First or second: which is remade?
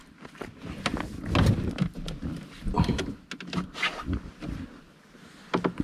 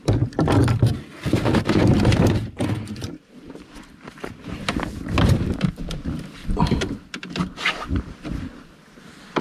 second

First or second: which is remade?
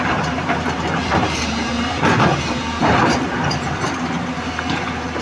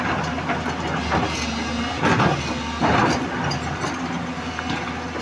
first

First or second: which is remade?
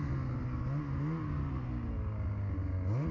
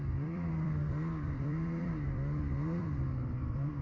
second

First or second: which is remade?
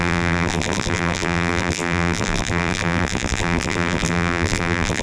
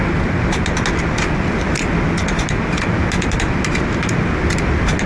first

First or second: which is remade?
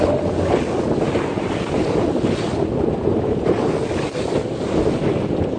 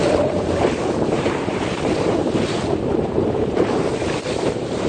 second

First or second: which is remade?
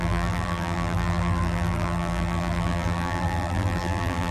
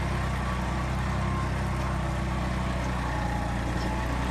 first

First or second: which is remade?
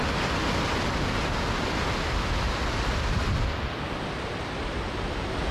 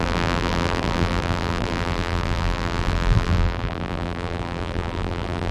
second